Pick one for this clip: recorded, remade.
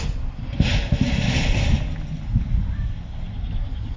recorded